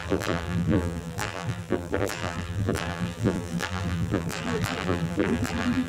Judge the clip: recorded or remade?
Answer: remade